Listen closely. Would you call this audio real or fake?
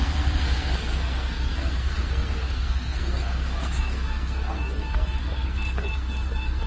fake